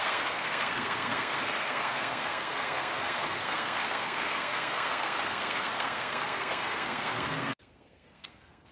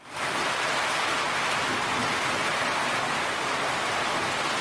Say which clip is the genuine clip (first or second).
second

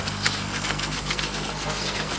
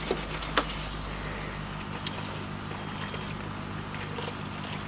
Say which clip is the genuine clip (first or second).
second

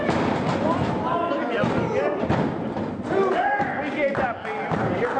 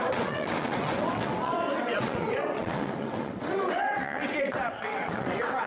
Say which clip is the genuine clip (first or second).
first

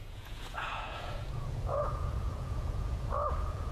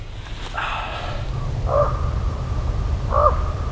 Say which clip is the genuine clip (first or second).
second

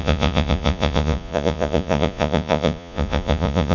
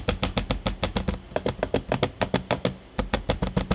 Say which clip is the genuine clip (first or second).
second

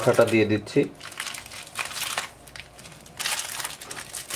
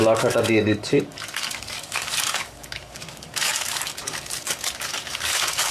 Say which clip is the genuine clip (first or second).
first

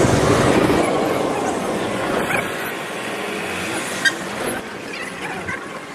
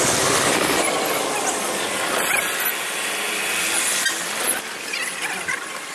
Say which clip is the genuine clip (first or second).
second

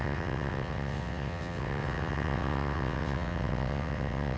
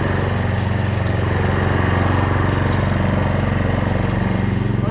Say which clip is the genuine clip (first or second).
second